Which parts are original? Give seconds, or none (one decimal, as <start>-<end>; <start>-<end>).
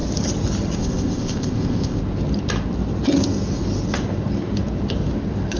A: 0.0-0.8; 2.0-5.6